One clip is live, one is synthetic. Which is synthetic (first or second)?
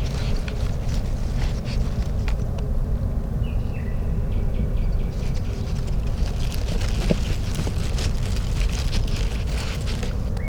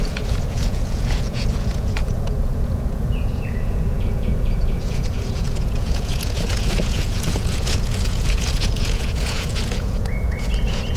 second